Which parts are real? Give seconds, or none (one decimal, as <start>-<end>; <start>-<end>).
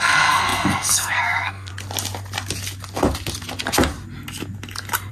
1.7-5.1